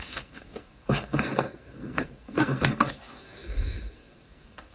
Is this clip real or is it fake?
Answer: fake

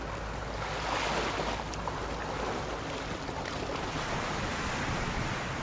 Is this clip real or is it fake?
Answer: real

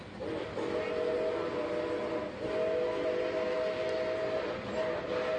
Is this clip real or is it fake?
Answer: real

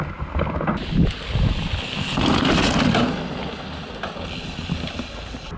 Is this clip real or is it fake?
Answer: real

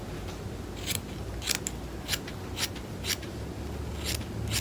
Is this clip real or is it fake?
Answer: real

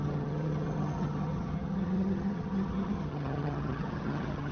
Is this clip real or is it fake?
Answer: fake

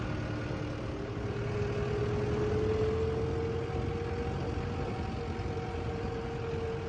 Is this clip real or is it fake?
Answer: real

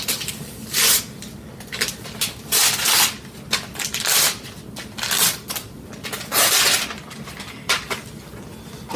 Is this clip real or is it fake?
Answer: real